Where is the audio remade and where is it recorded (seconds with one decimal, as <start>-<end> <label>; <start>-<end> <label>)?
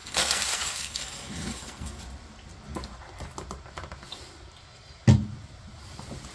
0.0-2.0 remade; 2.0-6.3 recorded